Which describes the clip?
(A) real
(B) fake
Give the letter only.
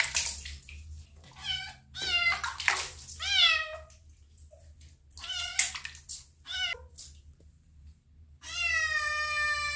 A